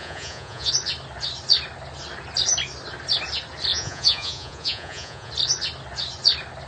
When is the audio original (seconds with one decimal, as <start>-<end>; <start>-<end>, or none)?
0.7-3.7; 5.3-6.7

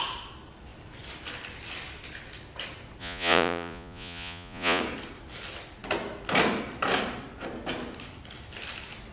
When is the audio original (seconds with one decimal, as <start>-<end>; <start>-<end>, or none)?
0.0-3.0; 4.8-9.1

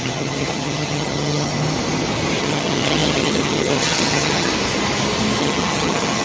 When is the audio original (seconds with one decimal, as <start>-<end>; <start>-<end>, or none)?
1.5-2.4; 4.5-5.4

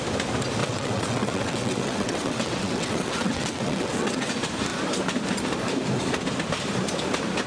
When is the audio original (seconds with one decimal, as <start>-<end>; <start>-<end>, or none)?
0.0-0.6; 4.3-7.5